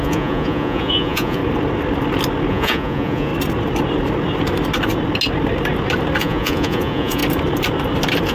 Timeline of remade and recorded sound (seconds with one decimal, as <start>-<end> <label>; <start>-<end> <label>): 0.0-1.4 remade; 1.4-2.5 recorded; 2.5-3.3 remade; 3.3-6.2 recorded; 6.2-7.2 remade; 7.2-8.3 recorded